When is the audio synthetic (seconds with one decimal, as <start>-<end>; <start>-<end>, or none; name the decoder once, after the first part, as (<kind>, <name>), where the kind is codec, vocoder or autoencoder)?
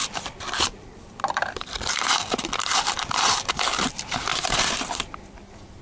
0.0-3.5 (vocoder, BigVGAN v2)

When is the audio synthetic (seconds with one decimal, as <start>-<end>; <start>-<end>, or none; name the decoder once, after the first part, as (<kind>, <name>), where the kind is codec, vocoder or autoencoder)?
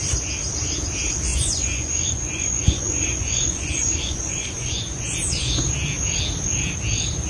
1.3-5.7 (vocoder, Vocos)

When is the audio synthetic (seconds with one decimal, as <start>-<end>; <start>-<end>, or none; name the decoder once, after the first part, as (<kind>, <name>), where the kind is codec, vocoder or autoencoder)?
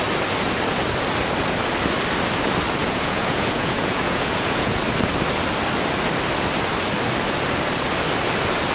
2.8-4.8 (vocoder, Vocos)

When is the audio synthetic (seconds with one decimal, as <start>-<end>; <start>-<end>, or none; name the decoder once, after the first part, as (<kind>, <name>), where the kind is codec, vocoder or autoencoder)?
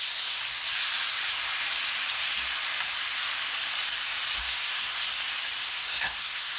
0.0-0.4 (codec, SNAC); 4.4-5.1; 5.6-6.6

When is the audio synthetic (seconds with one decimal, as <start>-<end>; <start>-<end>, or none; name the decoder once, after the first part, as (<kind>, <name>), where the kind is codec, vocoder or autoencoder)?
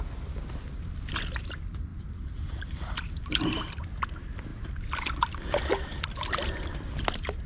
1.9-3.2 (vocoder, BigVGAN v2); 4.5-5.4